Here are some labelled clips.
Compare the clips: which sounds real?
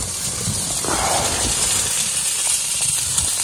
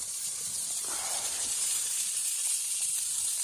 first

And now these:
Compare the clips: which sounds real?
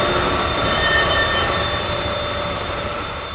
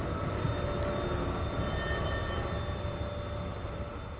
second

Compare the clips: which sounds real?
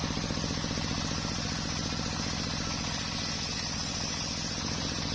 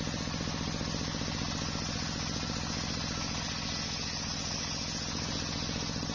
second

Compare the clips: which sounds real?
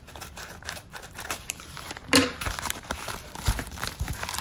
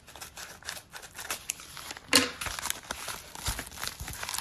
second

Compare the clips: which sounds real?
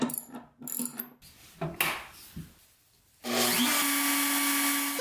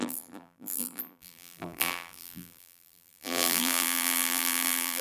first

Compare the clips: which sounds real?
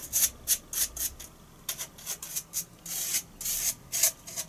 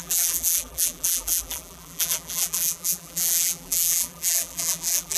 first